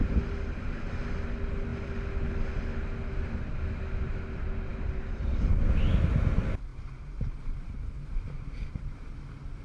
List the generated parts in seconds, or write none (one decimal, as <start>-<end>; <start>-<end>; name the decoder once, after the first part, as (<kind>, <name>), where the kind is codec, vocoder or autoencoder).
6.7-9.2 (vocoder, BigVGAN v2)